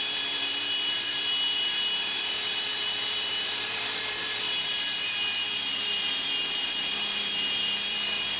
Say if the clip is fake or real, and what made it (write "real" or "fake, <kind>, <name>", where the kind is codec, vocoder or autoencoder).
fake, vocoder, BigVGAN v2